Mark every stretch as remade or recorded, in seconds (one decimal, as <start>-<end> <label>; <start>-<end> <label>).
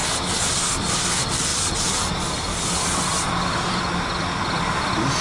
0.0-0.8 recorded; 0.8-1.5 remade; 1.5-3.7 recorded; 3.7-5.2 remade